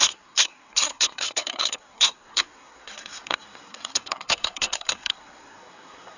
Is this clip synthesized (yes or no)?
yes